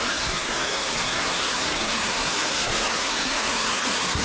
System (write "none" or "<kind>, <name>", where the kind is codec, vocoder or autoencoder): codec, SNAC